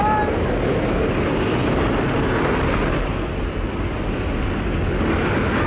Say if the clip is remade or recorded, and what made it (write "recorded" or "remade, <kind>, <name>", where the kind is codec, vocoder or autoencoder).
recorded